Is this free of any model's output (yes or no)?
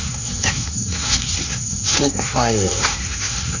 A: no